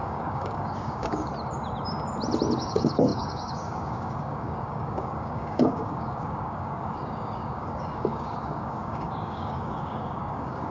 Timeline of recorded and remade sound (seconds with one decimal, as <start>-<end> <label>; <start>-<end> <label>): 0.0-1.3 remade; 1.3-2.6 recorded; 2.6-10.7 remade

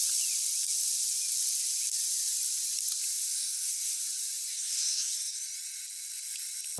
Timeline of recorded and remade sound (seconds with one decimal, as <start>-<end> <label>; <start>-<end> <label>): 0.0-3.3 recorded; 3.3-4.0 remade; 4.0-4.5 recorded; 4.5-5.4 remade; 5.4-6.8 recorded

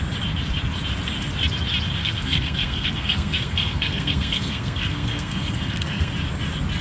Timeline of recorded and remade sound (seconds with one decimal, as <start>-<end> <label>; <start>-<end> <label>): 0.0-2.0 recorded; 2.0-6.1 remade; 6.1-6.8 recorded

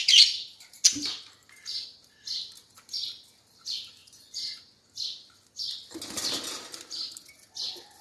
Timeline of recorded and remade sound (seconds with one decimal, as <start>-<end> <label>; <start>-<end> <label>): 0.0-4.0 recorded; 4.0-4.8 remade; 4.8-8.0 recorded

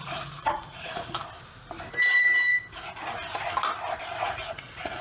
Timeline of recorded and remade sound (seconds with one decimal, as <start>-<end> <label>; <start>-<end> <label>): 0.0-1.2 remade; 1.2-4.2 recorded; 4.2-5.0 remade

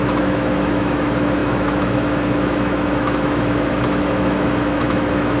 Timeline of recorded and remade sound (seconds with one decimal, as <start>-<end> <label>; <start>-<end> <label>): 0.0-5.4 remade

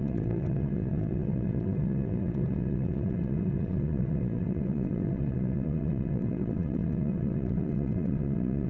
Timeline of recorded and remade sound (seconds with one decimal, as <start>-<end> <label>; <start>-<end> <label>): 0.0-8.7 remade

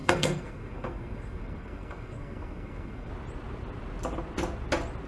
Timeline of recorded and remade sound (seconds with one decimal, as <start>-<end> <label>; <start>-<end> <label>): 0.0-3.1 remade; 3.1-5.1 recorded